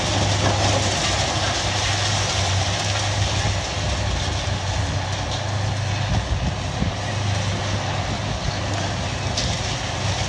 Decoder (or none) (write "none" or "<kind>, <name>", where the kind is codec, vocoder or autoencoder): none